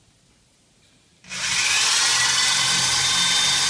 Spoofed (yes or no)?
no